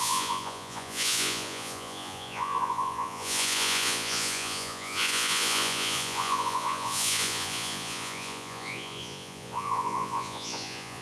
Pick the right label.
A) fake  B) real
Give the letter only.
A